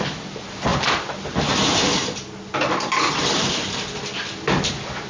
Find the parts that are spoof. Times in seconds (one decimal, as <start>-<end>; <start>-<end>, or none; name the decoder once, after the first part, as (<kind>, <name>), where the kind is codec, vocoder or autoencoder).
none